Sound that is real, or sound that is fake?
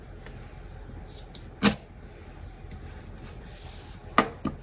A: real